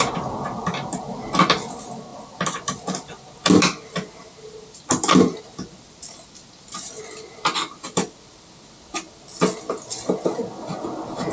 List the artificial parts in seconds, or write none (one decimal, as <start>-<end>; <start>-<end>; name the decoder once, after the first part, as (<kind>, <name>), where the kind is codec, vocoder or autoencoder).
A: none